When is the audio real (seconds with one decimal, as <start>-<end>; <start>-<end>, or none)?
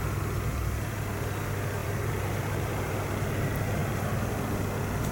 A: 0.0-0.5; 1.0-1.8; 3.1-5.1